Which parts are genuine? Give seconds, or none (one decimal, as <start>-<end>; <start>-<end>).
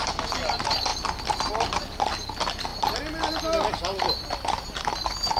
0.0-5.4